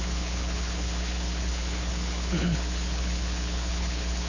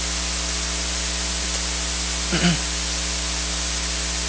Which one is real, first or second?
second